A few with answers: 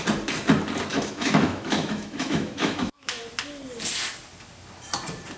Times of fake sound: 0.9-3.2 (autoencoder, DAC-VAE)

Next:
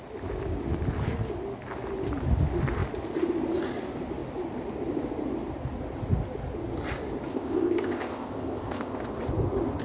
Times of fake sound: 7.3-9.0 (codec, ZipCodec)

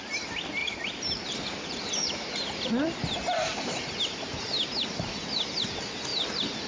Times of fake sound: 0.6-3.9 (vocoder, BigVGAN v2); 6.1-6.7

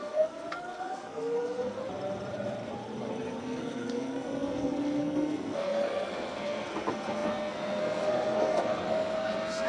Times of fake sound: 0.0-1.8 (codec, SNAC); 3.4-9.7

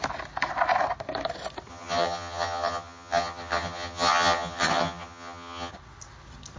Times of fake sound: 1.7-5.7 (vocoder, HiFi-GAN)